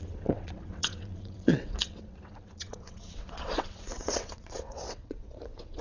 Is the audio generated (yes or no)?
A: yes